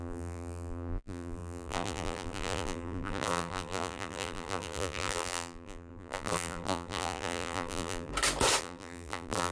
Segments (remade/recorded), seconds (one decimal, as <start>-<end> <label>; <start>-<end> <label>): 0.0-8.1 remade; 8.1-8.6 recorded; 8.6-9.5 remade

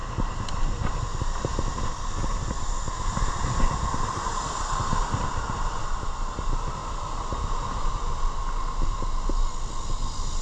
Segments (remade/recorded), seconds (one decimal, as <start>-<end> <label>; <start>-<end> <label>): 0.0-10.4 recorded